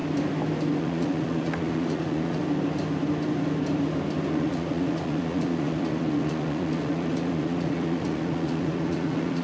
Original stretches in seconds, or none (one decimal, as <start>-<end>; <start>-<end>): 0.0-0.8; 2.4-4.3